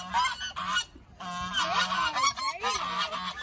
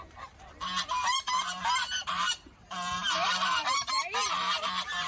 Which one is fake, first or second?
second